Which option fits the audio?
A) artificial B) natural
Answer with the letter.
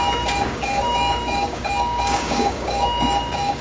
A